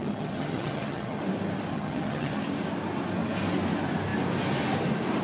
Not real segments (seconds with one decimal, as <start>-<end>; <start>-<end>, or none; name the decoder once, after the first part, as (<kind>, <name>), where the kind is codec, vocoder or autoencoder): 0.0-1.2 (vocoder, HiFi-GAN); 1.7-2.4